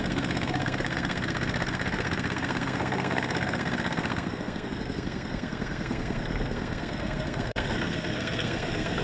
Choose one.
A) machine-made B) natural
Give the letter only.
A